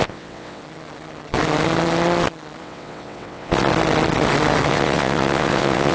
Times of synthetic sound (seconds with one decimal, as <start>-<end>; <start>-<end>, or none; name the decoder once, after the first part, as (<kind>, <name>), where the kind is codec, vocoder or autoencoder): 0.0-0.6 (vocoder, WaveNeXt); 2.6-3.7; 4.7-5.9